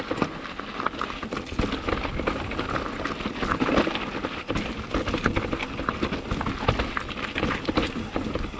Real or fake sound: real